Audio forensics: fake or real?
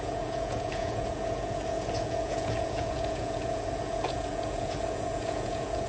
fake